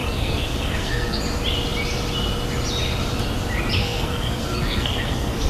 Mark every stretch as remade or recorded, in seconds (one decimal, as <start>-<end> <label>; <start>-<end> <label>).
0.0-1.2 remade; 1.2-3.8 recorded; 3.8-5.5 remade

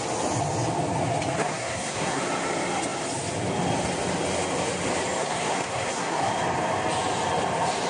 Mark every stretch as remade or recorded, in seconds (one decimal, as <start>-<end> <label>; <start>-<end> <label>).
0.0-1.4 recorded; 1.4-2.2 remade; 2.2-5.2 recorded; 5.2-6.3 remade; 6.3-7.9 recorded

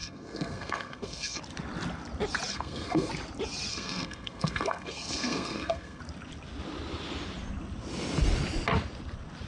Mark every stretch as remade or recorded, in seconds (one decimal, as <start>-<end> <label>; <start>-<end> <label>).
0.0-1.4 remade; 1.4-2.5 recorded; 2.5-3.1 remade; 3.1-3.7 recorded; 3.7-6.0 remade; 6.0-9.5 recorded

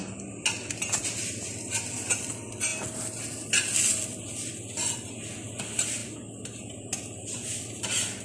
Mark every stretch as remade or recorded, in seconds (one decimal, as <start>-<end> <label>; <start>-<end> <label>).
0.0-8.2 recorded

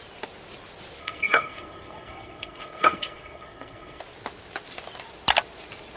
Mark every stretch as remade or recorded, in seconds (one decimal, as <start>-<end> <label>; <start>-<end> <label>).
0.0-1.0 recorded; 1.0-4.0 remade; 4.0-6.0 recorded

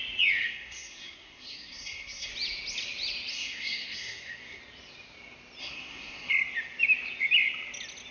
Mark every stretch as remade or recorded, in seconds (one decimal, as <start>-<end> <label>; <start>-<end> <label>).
0.0-0.4 recorded; 0.4-2.3 remade; 2.3-3.3 recorded; 3.3-4.6 remade; 4.6-5.6 recorded; 5.6-6.3 remade; 6.3-8.1 recorded